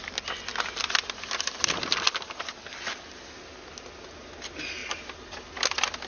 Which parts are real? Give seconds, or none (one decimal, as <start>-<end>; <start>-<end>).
0.0-6.1